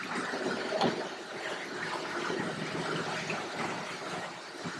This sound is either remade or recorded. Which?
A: recorded